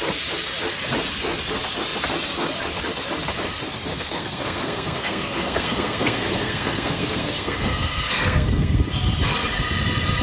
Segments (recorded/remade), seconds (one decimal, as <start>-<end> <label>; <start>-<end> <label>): 0.0-3.9 recorded; 3.9-8.8 remade; 8.8-10.2 recorded